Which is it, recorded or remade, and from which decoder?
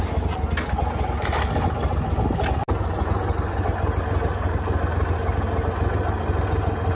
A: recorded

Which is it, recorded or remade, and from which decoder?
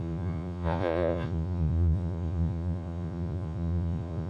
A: remade, vocoder, Vocos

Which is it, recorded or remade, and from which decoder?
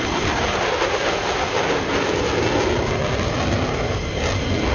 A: recorded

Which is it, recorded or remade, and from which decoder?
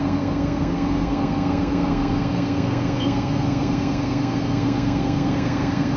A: remade, codec, SNAC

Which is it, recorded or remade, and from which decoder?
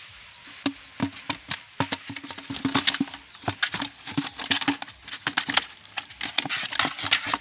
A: recorded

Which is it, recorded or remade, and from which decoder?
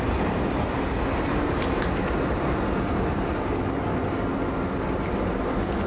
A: recorded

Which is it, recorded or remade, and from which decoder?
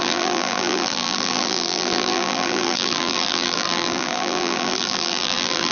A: remade, vocoder, BigVGAN v2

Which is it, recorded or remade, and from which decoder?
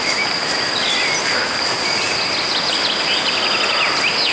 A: recorded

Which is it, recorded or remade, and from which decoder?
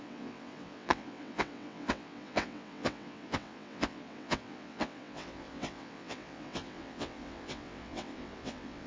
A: remade, vocoder, WaveNeXt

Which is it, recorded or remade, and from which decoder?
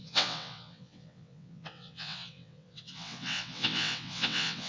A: remade, vocoder, WaveNeXt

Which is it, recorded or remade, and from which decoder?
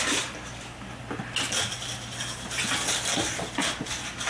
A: recorded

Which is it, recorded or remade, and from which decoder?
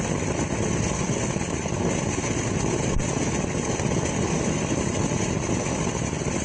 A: recorded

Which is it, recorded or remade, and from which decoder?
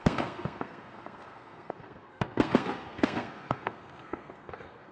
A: remade, codec, SNAC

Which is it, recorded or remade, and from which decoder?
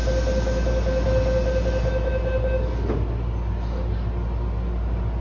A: recorded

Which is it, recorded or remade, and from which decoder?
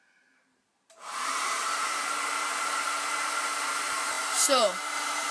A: remade, vocoder, BigVGAN v2